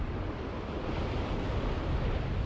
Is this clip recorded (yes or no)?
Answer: yes